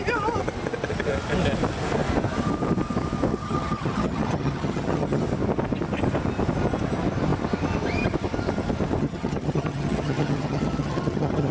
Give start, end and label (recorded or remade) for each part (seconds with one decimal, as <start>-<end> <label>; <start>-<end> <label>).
0.0-3.3 recorded; 3.3-5.2 remade; 5.2-9.0 recorded; 9.0-11.5 remade